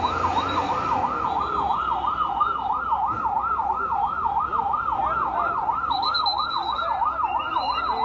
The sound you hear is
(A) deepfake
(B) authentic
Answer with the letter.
B